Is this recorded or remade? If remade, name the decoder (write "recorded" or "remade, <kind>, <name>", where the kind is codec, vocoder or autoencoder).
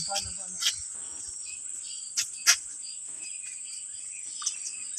recorded